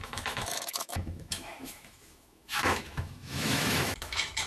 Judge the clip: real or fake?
fake